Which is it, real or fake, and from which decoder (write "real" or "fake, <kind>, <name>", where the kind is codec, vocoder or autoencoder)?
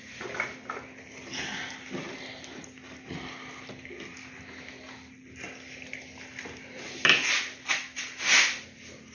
real